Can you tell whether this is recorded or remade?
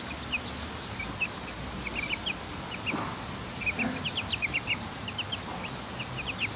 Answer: recorded